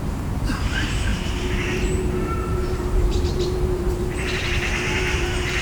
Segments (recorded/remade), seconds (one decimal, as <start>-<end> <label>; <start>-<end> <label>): 0.0-5.6 remade